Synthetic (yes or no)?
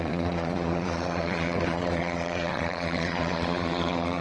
yes